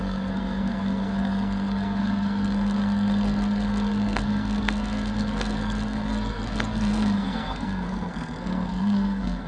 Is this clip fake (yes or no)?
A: yes